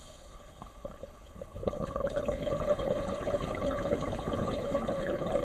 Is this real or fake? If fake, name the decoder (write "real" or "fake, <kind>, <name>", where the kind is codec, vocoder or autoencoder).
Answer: fake, codec, HILCodec